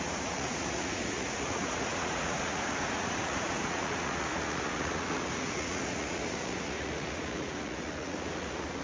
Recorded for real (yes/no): no